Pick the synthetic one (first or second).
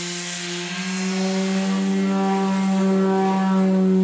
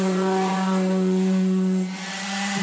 second